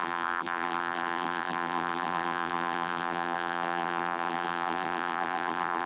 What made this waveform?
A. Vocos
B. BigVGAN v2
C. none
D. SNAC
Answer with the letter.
B